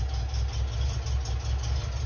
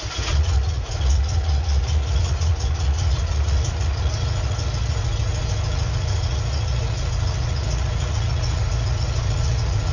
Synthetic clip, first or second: second